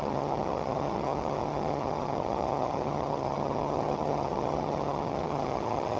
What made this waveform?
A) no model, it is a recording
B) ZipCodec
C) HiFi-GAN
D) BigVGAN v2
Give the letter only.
C